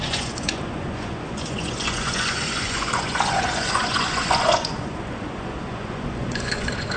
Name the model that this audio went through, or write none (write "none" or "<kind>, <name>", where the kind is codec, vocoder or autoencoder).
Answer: vocoder, Vocos